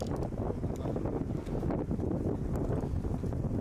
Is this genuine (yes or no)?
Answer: yes